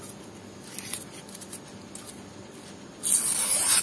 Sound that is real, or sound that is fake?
real